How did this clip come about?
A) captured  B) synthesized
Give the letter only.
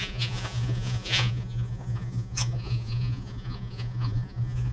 B